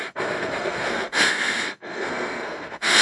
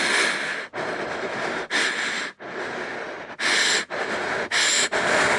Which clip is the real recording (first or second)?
second